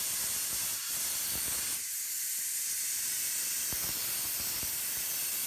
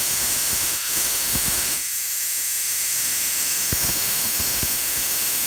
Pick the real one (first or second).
first